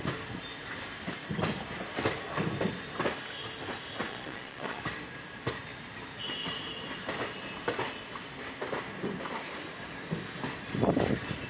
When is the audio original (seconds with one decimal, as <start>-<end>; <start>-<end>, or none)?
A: 0.0-4.1; 4.8-11.5